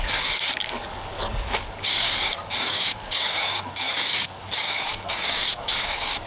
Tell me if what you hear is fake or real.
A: fake